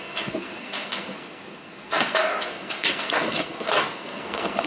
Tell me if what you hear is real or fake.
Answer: fake